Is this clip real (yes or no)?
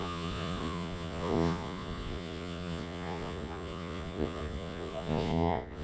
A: no